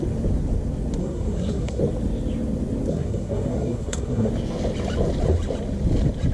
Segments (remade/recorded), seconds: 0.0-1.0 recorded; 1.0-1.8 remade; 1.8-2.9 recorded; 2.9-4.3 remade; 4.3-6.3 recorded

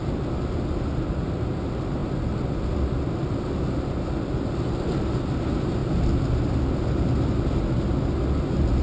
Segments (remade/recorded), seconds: 0.0-8.8 recorded

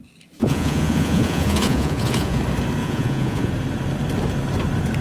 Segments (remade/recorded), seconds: 0.0-0.4 recorded; 0.4-2.4 remade; 2.4-2.8 recorded; 2.8-3.5 remade; 3.5-5.0 recorded